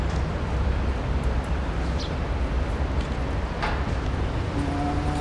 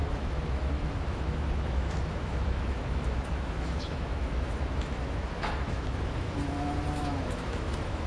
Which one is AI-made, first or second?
second